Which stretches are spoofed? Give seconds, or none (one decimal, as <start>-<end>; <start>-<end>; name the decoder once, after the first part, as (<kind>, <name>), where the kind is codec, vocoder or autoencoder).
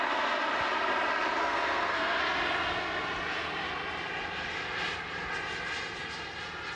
1.4-2.2 (codec, SNAC)